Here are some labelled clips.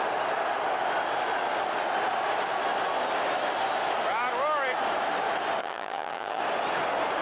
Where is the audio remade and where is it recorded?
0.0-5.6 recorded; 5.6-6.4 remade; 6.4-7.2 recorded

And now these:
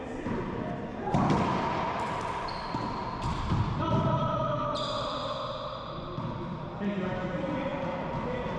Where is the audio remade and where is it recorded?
0.0-0.9 recorded; 0.9-5.4 remade; 5.4-8.6 recorded

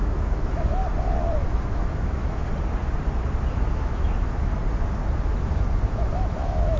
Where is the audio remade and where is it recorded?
0.0-0.8 remade; 0.8-1.5 recorded; 1.5-2.4 remade; 2.4-3.5 recorded; 3.5-4.5 remade; 4.5-5.9 recorded; 5.9-6.8 remade

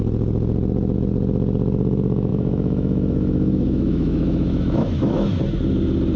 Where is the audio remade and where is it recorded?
0.0-2.3 recorded; 2.3-5.4 remade; 5.4-6.2 recorded

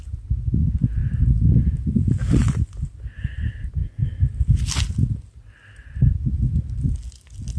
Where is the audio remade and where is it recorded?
0.0-7.6 recorded

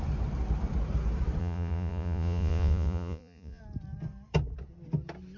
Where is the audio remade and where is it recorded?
0.0-1.4 recorded; 1.4-3.6 remade; 3.6-5.4 recorded